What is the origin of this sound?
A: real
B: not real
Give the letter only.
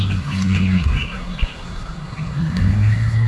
B